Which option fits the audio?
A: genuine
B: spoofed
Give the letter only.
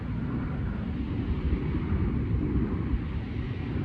A